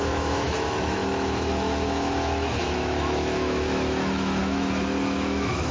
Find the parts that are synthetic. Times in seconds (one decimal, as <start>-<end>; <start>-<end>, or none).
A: 0.0-5.7